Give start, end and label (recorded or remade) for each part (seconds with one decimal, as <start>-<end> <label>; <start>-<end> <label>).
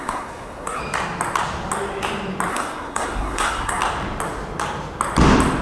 0.0-0.8 remade; 0.8-2.5 recorded; 2.5-3.8 remade; 3.8-5.6 recorded